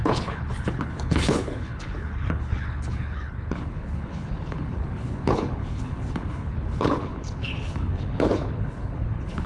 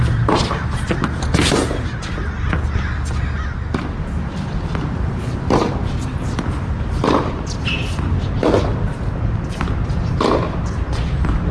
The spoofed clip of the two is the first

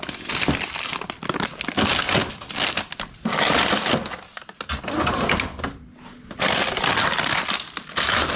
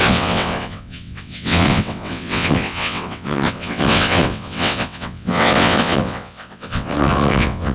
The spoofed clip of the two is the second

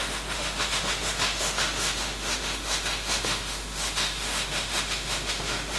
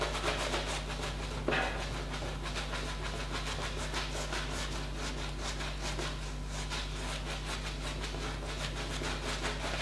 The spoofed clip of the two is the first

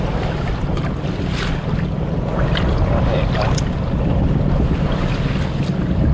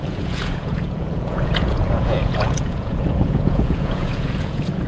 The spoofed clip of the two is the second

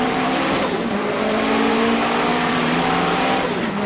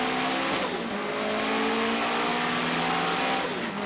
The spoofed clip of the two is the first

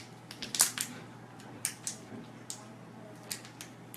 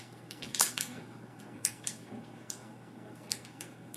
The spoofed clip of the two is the second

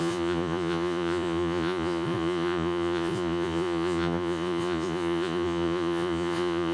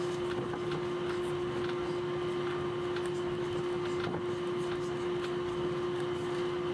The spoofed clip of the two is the first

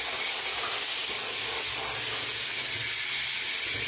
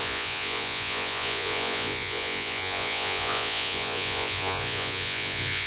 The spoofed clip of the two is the second